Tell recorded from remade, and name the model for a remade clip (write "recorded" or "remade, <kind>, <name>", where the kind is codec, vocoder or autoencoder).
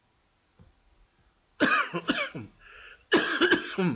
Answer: recorded